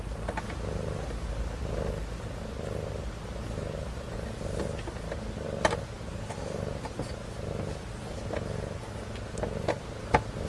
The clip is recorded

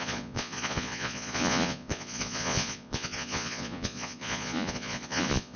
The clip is remade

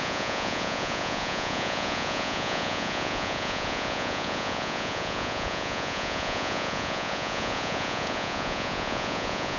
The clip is remade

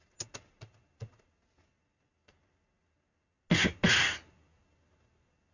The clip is recorded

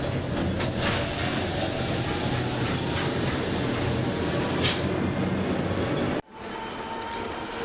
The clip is recorded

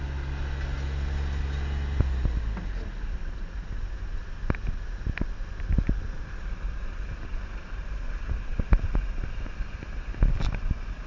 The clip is recorded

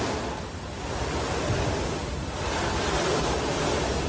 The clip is recorded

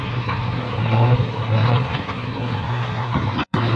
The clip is remade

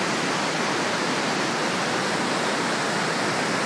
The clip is recorded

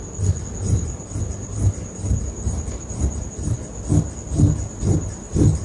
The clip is recorded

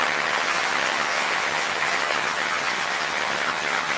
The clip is remade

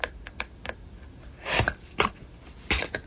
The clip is recorded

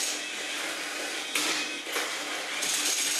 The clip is recorded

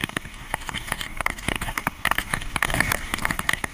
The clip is remade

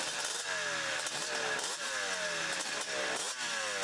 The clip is recorded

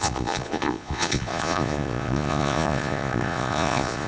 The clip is remade